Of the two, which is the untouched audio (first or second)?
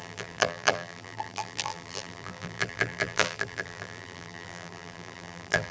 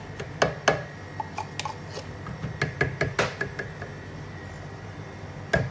second